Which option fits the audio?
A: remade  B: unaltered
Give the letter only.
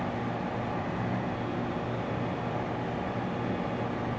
B